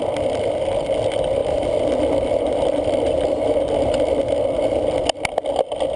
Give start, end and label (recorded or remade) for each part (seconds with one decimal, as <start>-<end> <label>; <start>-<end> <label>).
0.0-6.0 recorded